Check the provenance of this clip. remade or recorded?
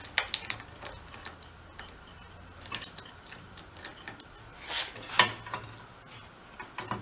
recorded